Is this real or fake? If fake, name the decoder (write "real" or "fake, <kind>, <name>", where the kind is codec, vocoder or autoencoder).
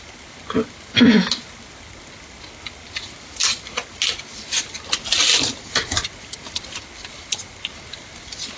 real